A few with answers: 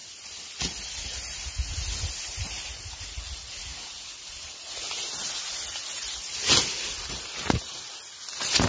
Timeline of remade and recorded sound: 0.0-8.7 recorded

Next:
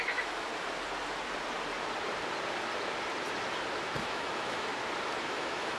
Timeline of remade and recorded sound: 0.0-0.5 remade; 0.5-4.0 recorded; 4.0-4.7 remade; 4.7-5.2 recorded; 5.2-5.8 remade

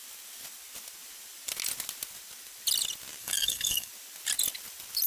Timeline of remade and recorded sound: 0.0-3.2 recorded; 3.2-3.9 remade; 3.9-5.1 recorded

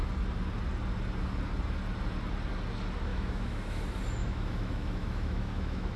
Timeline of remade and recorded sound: 0.0-3.1 recorded; 3.1-3.8 remade; 3.8-4.2 recorded; 4.2-6.0 remade

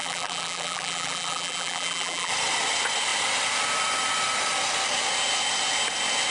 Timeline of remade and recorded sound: 0.0-2.3 remade; 2.3-6.3 recorded